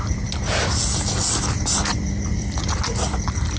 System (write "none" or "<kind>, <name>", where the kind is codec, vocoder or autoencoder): none